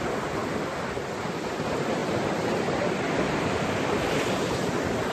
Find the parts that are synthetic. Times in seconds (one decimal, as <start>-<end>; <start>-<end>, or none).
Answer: 0.4-1.2